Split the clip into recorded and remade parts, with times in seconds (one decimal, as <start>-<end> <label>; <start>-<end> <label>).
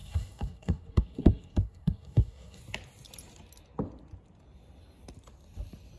0.0-2.6 remade; 2.6-6.0 recorded